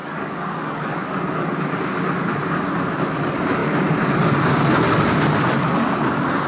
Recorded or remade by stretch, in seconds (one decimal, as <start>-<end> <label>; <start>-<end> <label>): 0.0-1.6 remade; 1.6-6.5 recorded